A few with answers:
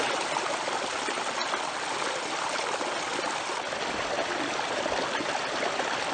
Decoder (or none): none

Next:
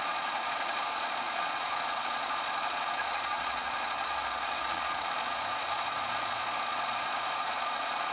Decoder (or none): vocoder, Vocos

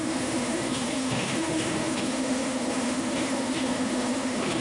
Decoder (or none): autoencoder, DAC-VAE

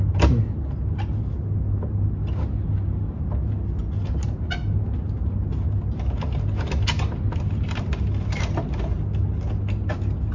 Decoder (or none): none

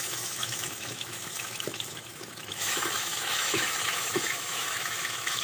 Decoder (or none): autoencoder, DAC-VAE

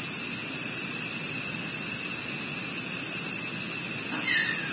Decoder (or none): none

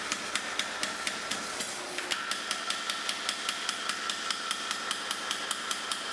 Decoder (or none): none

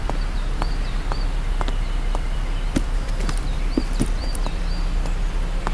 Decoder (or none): vocoder, BigVGAN v2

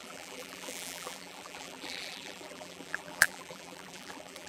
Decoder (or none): vocoder, BigVGAN v2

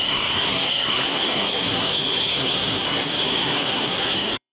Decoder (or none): codec, SNAC